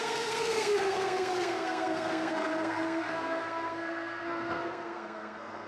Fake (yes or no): yes